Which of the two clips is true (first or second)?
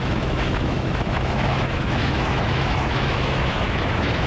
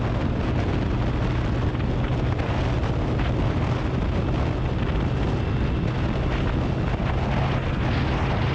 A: second